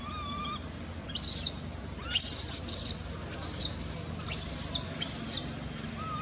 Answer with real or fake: real